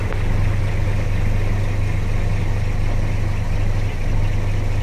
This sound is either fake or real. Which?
real